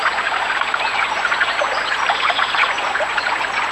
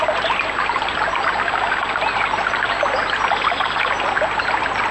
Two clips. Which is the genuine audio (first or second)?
second